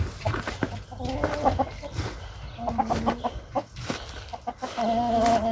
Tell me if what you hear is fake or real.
real